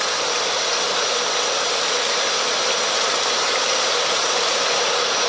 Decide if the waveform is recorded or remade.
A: recorded